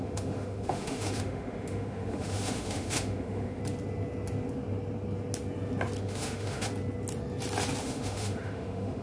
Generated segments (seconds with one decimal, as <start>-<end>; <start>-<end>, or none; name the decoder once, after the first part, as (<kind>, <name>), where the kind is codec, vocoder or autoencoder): 0.0-3.6 (autoencoder, DAC-VAE); 6.0-6.7; 7.8-9.0